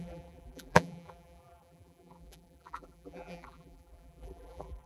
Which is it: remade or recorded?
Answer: remade